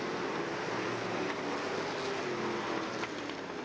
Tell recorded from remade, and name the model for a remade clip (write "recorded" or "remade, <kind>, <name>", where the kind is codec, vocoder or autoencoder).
recorded